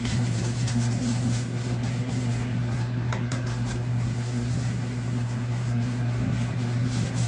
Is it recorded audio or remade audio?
remade